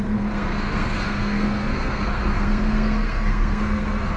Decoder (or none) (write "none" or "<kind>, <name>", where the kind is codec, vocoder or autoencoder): codec, SNAC